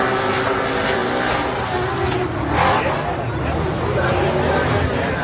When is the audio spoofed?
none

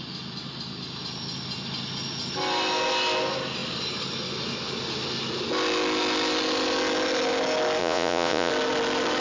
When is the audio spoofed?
7.8-8.5 (vocoder, Vocos)